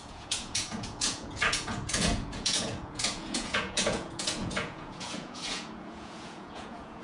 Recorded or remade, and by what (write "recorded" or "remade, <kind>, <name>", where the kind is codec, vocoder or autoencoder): remade, vocoder, Vocos